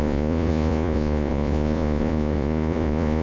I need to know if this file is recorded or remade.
remade